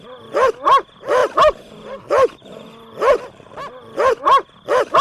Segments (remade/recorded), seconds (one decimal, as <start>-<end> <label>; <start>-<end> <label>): 0.0-5.0 recorded